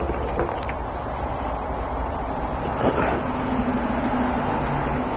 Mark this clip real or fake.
real